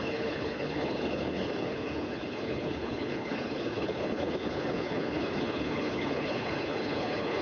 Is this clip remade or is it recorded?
remade